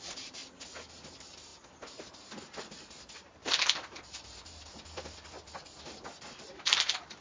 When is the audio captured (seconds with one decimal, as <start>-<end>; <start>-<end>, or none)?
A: 0.4-0.9; 1.5-2.8; 3.4-6.2